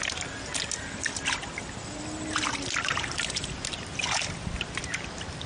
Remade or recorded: recorded